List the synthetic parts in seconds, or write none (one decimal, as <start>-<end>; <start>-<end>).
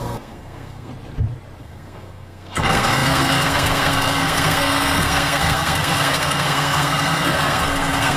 0.0-0.9; 1.6-8.2